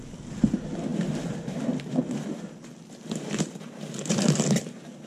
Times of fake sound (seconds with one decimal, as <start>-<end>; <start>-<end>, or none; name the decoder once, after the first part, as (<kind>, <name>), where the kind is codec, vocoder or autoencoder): 0.0-5.1 (vocoder, BigVGAN v2)